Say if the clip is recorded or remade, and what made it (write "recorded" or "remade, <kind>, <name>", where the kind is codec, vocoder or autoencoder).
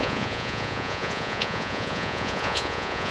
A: remade, vocoder, Vocos